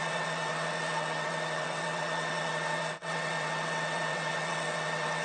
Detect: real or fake fake